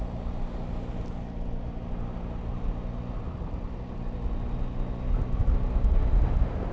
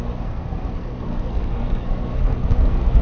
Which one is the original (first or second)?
first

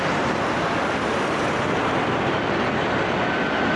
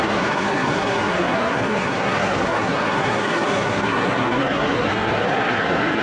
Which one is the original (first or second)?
first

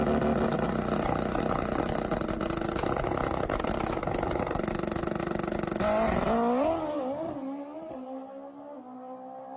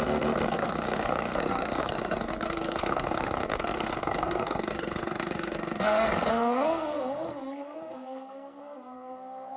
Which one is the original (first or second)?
first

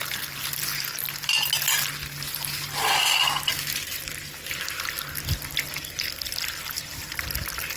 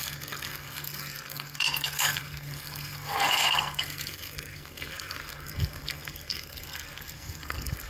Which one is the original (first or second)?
first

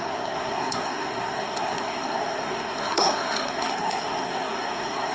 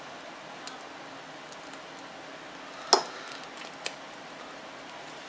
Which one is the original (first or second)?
second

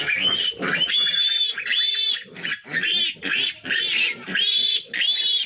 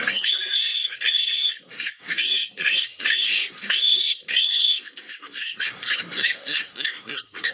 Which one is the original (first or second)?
first